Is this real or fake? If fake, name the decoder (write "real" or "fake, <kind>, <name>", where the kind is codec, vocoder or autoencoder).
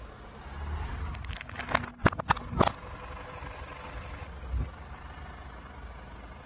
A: real